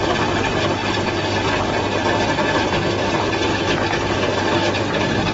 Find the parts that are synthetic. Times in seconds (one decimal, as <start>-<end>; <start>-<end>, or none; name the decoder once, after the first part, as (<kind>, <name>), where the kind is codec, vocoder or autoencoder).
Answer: none